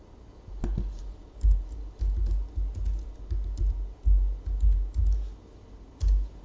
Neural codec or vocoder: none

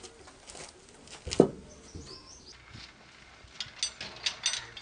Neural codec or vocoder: none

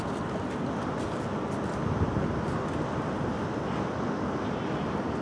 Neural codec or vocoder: none